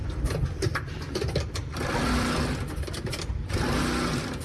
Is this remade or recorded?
recorded